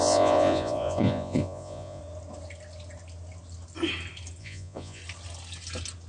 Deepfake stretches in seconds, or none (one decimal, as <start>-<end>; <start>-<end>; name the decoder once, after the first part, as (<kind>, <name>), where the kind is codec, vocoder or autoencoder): 0.0-2.0 (vocoder, Vocos); 4.4-5.0